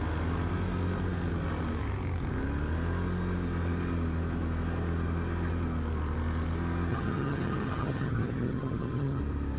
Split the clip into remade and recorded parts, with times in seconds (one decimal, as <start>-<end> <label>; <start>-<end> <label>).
0.0-6.9 recorded; 6.9-9.2 remade; 9.2-9.6 recorded